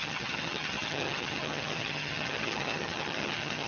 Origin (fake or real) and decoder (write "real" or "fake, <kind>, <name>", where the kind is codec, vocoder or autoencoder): fake, vocoder, HiFi-GAN